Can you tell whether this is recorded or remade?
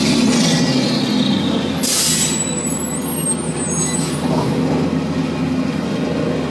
recorded